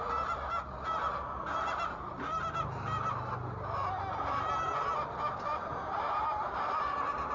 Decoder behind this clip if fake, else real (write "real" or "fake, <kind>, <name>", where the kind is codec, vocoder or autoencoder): real